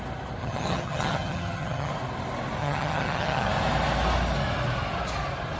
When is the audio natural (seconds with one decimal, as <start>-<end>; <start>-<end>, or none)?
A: 0.0-0.4; 1.9-2.6; 3.5-5.6